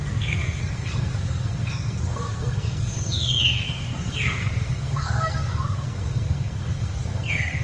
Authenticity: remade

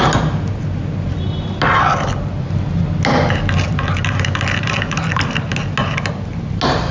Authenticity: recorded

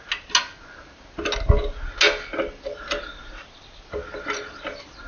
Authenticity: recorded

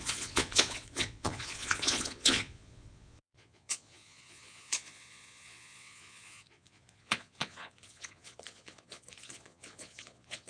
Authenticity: remade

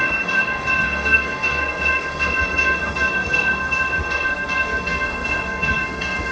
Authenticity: remade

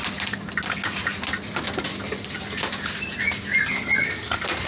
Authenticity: recorded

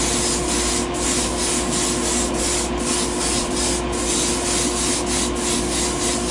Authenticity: recorded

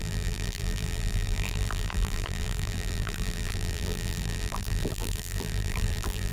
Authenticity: remade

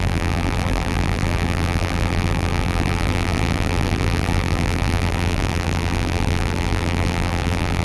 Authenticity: remade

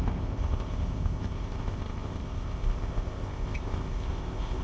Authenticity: remade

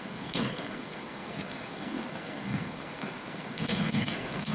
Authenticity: remade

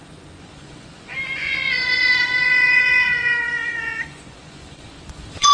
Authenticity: remade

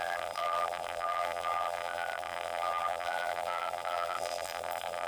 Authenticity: remade